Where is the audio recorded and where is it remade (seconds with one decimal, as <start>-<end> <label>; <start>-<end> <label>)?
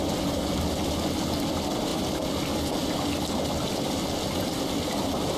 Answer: 0.0-5.4 recorded